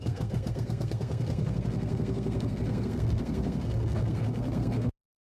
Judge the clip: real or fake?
fake